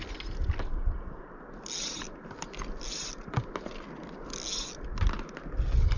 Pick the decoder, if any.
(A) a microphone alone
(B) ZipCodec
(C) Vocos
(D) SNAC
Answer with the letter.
A